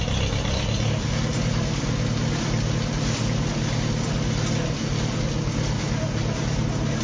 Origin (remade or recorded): recorded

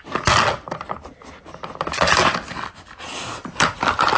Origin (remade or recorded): recorded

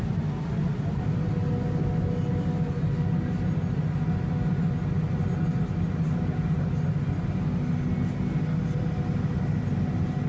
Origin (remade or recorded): recorded